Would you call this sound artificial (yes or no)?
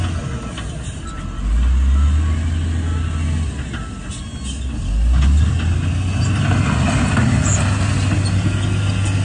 no